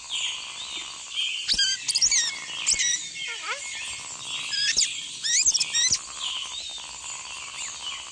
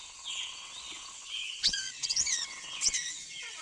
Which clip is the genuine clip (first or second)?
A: first